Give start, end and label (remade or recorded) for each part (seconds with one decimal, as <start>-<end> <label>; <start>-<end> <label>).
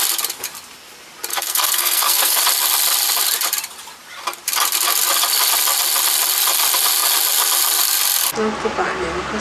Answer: 0.0-1.3 recorded; 1.3-2.4 remade; 2.4-9.4 recorded